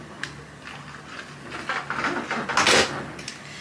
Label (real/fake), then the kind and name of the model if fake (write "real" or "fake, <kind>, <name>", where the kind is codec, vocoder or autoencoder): real